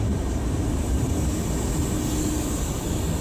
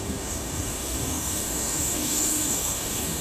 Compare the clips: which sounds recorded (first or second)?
first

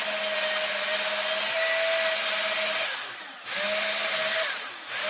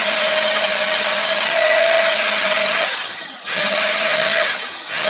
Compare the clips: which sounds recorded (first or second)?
first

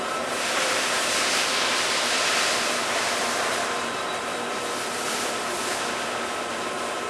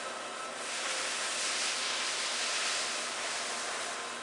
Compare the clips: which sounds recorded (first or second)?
second